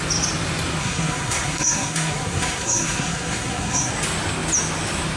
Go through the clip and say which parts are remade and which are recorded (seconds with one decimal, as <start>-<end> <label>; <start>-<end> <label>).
0.0-0.8 recorded; 0.8-3.9 remade; 3.9-5.2 recorded